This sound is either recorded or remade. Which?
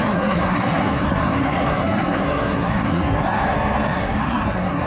remade